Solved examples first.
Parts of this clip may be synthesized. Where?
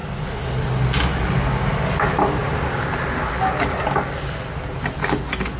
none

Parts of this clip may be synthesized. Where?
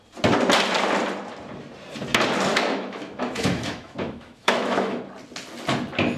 2.5-5.0 (autoencoder, DAC-VAE)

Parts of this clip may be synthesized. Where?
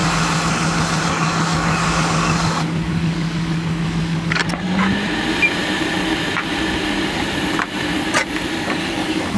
1.0-4.4 (codec, DAC); 8.6-9.4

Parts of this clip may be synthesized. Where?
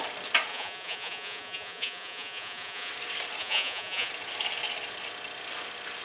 0.5-2.9 (vocoder, Vocos); 3.4-4.1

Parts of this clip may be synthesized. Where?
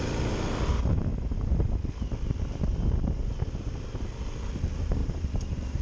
5.0-5.8 (vocoder, BigVGAN v2)